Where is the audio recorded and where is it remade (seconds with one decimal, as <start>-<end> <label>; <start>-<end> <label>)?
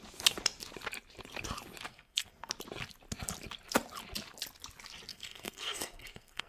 0.0-1.9 recorded; 1.9-2.5 remade; 2.5-5.1 recorded; 5.1-6.5 remade